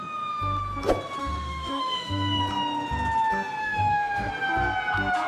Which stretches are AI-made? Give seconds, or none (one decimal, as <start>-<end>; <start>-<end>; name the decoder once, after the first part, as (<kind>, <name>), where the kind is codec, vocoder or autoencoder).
1.2-2.4 (autoencoder, DAC-VAE); 3.6-4.3